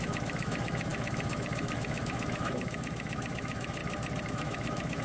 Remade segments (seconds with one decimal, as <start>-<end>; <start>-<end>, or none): 0.0-3.8; 4.3-5.0